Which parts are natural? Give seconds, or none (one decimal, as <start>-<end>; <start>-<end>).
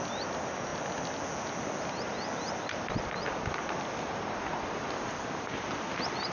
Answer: 0.0-6.3